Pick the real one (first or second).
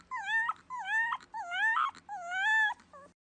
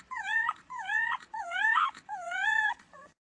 first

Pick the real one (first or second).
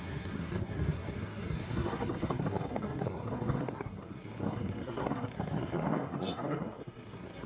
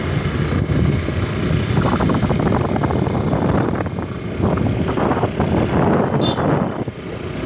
second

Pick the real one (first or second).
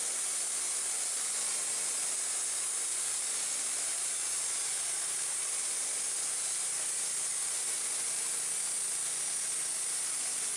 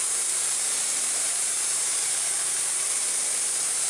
first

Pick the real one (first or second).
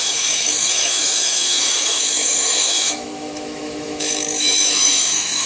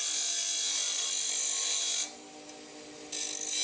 second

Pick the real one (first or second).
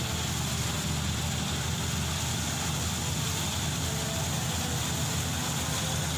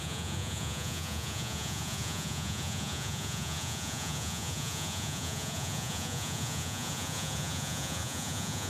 first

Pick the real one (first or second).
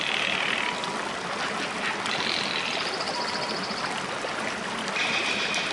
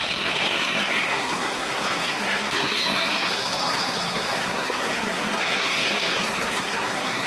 first